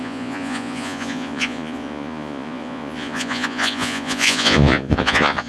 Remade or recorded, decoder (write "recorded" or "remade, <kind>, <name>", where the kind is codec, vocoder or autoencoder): remade, vocoder, Vocos